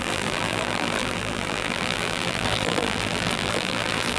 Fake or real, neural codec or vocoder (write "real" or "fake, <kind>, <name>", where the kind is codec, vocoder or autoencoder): fake, vocoder, BigVGAN v2